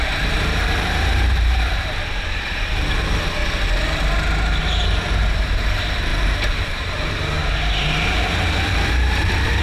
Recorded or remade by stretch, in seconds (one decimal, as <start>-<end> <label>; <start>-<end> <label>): 0.0-3.4 remade; 3.4-4.6 recorded; 4.6-9.6 remade